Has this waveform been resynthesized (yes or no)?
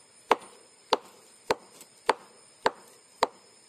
no